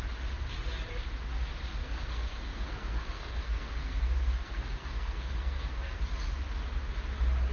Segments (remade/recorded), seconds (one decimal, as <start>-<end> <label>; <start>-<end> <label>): 0.0-1.8 recorded; 1.8-6.0 remade; 6.0-7.5 recorded